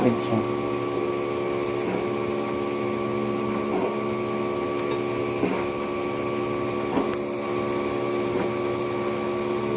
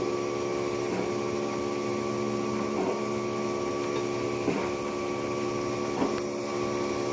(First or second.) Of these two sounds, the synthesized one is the second